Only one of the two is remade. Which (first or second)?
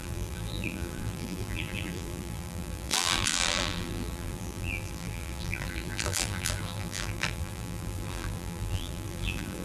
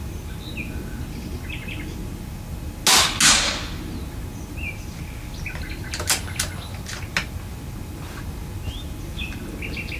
first